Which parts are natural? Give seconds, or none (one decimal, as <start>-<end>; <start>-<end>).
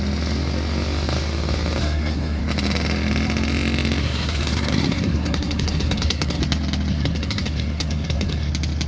0.0-1.8; 2.4-4.0; 6.4-6.9; 8.5-8.9